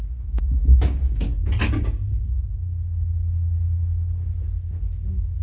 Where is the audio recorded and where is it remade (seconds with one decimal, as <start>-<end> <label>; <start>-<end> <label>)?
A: 0.0-5.4 recorded